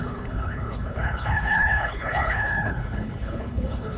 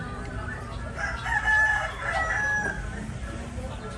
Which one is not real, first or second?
first